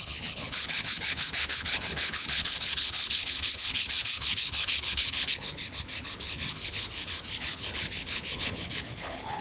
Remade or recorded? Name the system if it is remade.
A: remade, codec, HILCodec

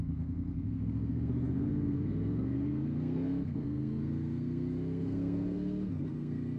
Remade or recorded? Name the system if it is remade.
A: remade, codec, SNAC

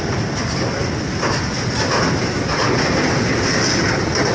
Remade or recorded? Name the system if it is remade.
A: recorded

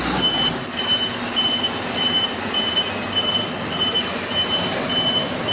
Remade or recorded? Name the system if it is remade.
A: recorded